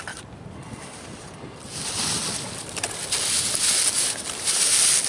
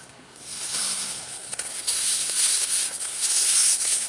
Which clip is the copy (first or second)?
second